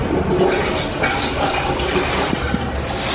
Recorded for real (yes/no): yes